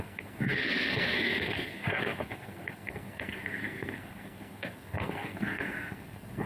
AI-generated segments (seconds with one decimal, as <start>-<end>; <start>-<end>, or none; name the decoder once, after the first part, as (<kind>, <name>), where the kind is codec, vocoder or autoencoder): 0.0-6.5 (codec, SNAC)